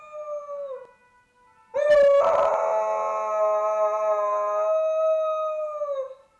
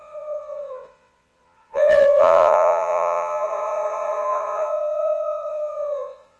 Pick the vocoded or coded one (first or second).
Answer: second